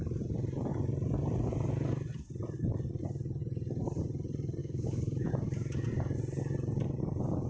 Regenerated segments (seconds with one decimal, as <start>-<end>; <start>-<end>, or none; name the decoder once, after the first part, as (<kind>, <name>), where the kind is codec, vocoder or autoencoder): 4.6-5.3 (autoencoder, DAC-VAE)